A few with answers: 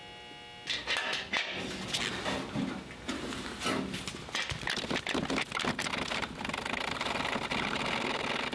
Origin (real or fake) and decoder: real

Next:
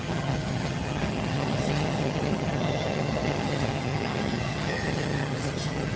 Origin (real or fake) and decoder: fake, vocoder, HiFi-GAN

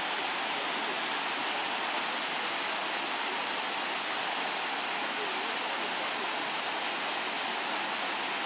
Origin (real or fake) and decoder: real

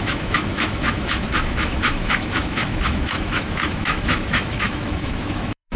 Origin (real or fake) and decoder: fake, autoencoder, DAC-VAE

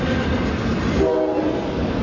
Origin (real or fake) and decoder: real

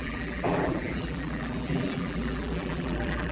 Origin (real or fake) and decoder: fake, vocoder, BigVGAN v2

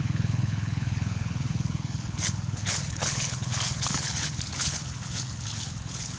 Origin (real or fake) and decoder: fake, codec, HILCodec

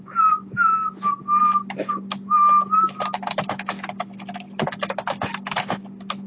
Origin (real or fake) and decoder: real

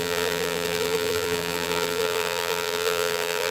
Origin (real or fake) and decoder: fake, vocoder, BigVGAN v2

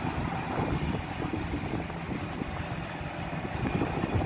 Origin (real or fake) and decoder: real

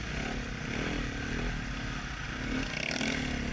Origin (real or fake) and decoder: real